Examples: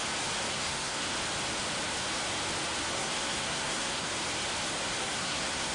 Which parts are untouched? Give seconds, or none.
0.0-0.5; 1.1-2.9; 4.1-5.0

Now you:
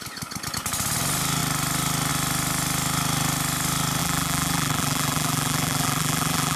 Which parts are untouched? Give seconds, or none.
0.0-4.0

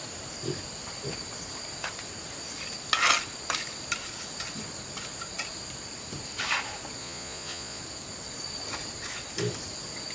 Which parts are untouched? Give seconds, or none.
0.0-7.0; 7.8-10.1

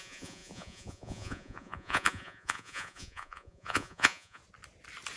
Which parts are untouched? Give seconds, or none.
4.4-5.2

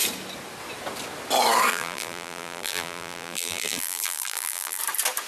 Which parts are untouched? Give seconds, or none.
0.0-1.7; 4.8-5.3

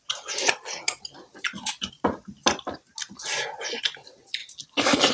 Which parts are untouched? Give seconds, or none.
0.0-5.1

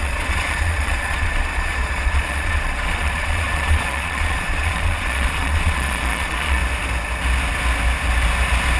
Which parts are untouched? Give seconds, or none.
6.6-8.8